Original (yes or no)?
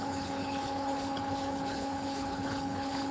no